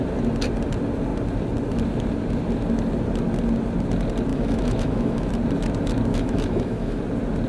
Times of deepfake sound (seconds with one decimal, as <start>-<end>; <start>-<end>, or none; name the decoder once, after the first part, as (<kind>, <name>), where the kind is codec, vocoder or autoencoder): 4.3-5.3 (autoencoder, DAC-VAE); 6.1-7.0

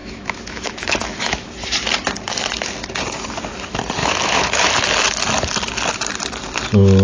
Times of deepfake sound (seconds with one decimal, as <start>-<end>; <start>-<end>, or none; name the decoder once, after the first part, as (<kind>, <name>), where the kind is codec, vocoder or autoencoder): 0.0-1.5 (autoencoder, DAC-VAE); 4.0-4.7

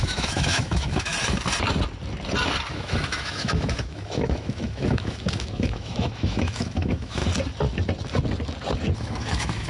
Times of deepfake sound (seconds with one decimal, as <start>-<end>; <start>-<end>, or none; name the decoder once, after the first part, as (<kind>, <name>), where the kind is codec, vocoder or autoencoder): 0.0-1.1 (autoencoder, DAC-VAE); 2.7-7.2; 9.0-9.7